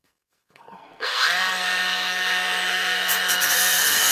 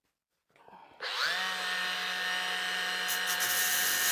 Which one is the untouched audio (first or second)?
second